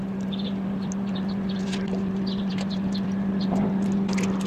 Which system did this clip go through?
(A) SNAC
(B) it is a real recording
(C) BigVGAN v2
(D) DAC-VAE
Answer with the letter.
B